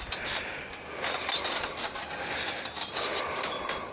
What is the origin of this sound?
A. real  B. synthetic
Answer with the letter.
A